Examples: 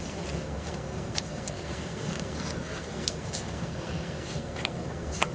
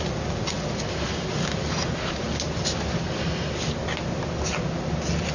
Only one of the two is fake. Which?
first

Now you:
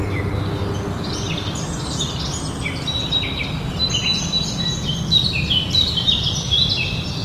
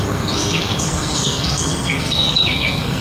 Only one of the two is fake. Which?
second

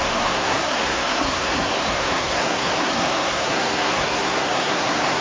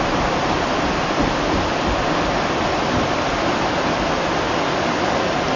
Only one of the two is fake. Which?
first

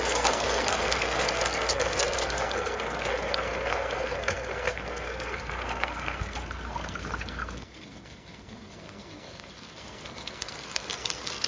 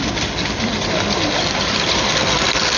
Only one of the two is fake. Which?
first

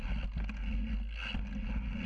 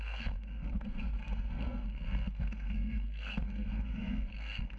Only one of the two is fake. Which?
second